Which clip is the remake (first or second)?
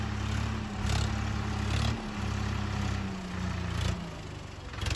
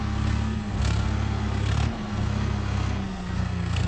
second